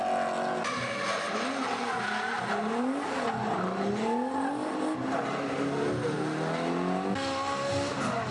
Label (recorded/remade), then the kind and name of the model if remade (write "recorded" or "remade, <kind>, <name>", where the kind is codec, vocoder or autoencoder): recorded